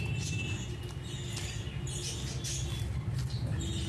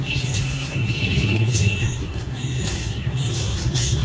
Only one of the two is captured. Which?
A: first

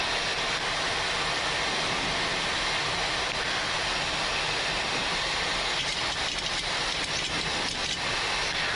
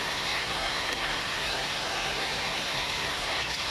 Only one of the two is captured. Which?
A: first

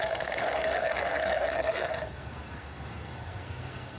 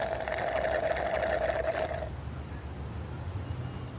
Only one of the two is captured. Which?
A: second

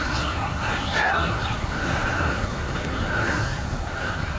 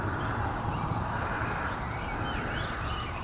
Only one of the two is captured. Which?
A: second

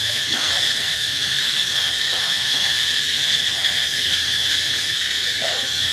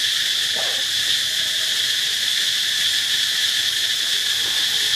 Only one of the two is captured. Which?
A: second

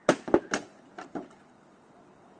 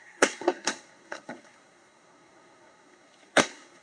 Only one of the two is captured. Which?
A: first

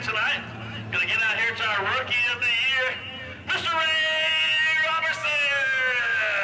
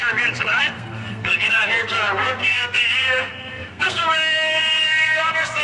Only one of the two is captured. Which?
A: first